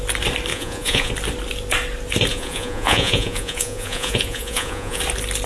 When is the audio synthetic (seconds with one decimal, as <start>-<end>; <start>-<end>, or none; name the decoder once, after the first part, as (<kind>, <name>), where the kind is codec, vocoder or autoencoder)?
0.5-1.1 (vocoder, Vocos); 2.3-5.0